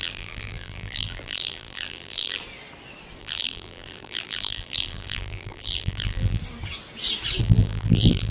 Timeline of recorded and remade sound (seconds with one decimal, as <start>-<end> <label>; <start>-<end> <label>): 0.0-2.4 remade; 2.4-3.2 recorded; 3.2-6.4 remade; 6.4-7.4 recorded; 7.4-8.3 remade